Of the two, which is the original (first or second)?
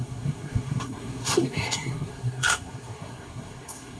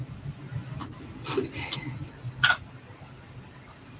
second